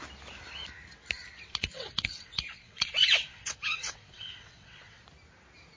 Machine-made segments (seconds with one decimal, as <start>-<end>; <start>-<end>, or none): 1.6-5.0